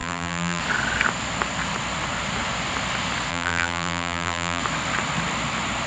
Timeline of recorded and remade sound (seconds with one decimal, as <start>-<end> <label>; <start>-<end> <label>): 0.0-0.6 remade; 0.6-3.3 recorded; 3.3-4.6 remade; 4.6-5.9 recorded